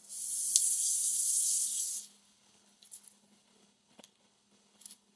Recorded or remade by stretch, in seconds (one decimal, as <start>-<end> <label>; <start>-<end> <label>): 0.0-0.6 recorded; 0.6-5.2 remade